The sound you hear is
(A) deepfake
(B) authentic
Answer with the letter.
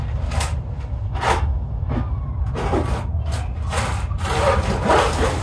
B